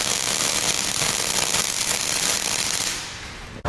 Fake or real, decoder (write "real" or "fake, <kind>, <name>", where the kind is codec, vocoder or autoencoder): real